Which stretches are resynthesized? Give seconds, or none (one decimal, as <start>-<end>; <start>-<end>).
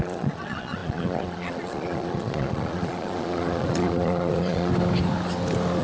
0.0-4.7